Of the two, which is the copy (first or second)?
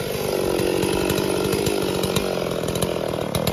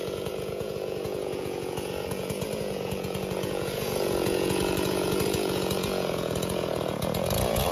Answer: second